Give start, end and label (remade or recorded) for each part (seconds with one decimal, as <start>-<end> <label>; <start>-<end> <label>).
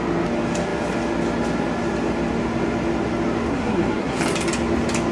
0.0-3.5 recorded; 3.5-4.2 remade; 4.2-5.1 recorded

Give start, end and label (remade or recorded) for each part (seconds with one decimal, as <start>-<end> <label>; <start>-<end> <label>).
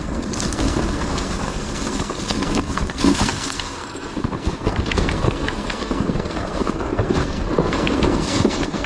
0.0-8.9 remade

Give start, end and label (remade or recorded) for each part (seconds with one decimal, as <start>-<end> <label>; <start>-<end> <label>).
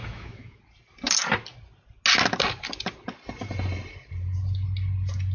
0.0-0.6 remade; 0.6-5.3 recorded